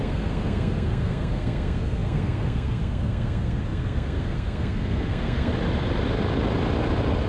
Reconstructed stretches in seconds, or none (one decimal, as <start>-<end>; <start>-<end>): 0.0-5.5